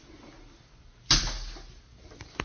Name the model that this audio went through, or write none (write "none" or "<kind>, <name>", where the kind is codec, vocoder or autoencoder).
none